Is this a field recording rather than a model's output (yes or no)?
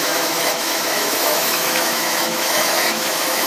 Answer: no